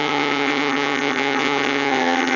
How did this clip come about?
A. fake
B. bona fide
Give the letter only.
A